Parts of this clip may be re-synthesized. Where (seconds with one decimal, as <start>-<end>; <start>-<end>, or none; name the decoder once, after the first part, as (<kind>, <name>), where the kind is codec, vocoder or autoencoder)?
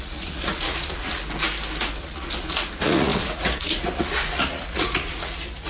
0.0-1.2 (vocoder, Vocos); 2.0-5.7